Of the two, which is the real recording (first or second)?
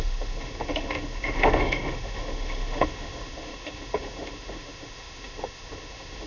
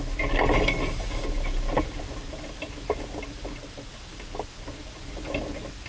second